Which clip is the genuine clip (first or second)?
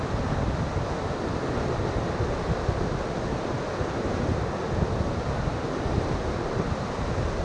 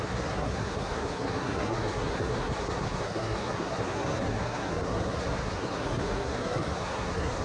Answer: first